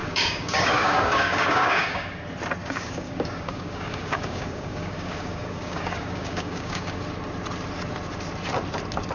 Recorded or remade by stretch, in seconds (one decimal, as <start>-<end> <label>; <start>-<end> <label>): 0.0-2.1 remade; 2.1-2.6 recorded; 2.6-7.0 remade; 7.0-9.1 recorded